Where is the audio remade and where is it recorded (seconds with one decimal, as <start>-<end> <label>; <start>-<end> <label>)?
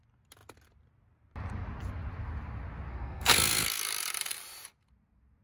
0.0-2.9 recorded; 2.9-3.8 remade; 3.8-5.4 recorded